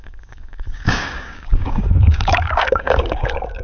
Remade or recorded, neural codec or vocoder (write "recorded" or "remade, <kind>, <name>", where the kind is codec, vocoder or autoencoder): remade, codec, DAC